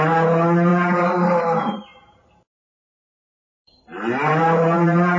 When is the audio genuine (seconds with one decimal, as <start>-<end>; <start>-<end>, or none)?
0.0-1.9